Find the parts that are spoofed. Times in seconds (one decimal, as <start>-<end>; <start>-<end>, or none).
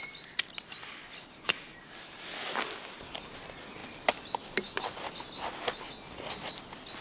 none